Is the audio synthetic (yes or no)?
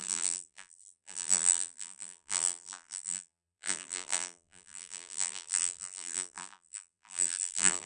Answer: yes